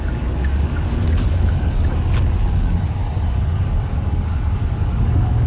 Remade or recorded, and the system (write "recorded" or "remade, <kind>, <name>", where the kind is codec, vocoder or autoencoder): remade, codec, DAC